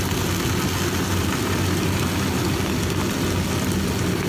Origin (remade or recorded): recorded